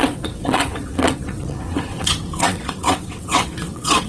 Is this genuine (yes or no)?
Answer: no